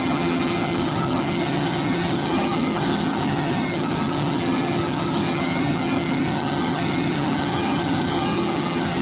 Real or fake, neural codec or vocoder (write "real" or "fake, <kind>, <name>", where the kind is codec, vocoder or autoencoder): fake, vocoder, HiFi-GAN